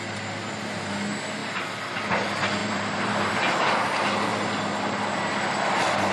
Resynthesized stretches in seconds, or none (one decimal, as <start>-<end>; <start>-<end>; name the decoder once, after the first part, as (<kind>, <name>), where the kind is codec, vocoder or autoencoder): 2.6-3.3 (vocoder, BigVGAN v2)